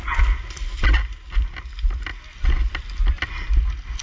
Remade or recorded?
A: recorded